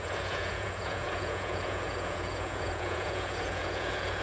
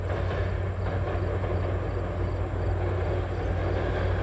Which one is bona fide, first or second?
second